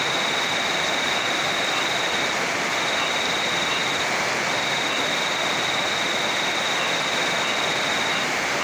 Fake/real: real